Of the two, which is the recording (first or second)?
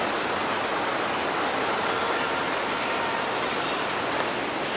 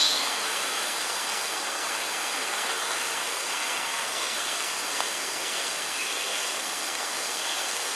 first